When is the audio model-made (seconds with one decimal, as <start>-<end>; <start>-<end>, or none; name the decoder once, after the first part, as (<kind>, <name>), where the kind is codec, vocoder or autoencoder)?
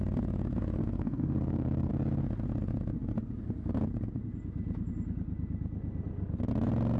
0.8-1.9 (codec, SNAC)